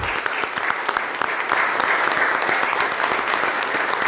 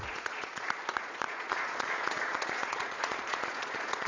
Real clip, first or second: first